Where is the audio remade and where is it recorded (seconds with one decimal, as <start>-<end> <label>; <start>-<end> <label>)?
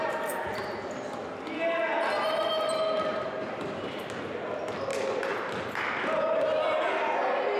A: 0.0-3.1 recorded; 3.1-4.0 remade; 4.0-7.6 recorded